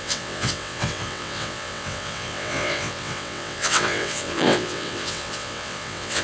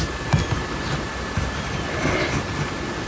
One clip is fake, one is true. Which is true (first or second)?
second